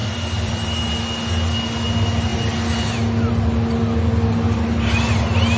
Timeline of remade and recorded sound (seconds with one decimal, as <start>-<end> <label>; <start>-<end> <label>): 0.0-0.8 remade; 0.8-5.6 recorded